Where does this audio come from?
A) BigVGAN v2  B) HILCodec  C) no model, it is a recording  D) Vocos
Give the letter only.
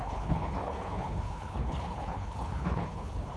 B